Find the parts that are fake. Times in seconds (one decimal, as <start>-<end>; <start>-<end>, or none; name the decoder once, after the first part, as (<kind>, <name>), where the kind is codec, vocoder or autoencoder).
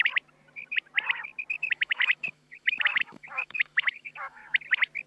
1.6-4.4 (autoencoder, DAC-VAE)